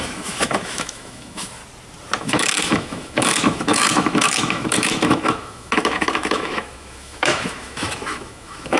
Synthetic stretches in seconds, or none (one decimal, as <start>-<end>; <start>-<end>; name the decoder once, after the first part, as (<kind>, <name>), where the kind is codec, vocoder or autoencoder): 0.0-1.6 (autoencoder, DAC-VAE); 2.2-8.8